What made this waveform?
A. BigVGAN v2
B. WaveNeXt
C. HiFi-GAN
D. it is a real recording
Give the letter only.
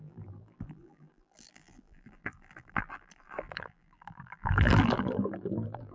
A